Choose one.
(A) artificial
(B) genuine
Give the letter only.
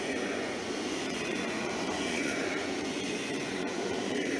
A